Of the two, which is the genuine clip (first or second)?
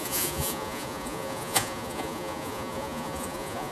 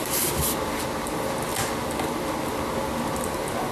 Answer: second